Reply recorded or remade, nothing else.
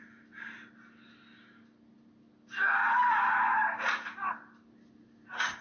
recorded